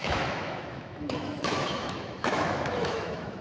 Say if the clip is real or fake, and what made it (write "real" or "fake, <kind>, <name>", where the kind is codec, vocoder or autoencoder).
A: fake, autoencoder, DAC-VAE